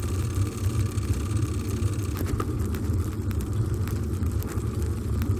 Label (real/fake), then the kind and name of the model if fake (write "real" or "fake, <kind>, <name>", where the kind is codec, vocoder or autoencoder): real